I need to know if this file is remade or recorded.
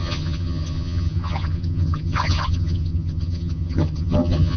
remade